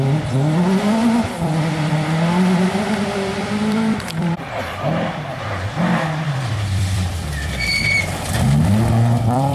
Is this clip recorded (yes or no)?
no